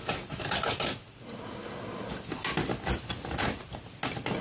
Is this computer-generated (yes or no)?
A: no